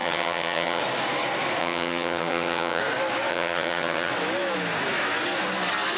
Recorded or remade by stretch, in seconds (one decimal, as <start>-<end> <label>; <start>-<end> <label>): 0.0-0.8 remade; 0.8-1.6 recorded; 1.6-2.8 remade; 2.8-3.3 recorded; 3.3-4.1 remade; 4.1-6.0 recorded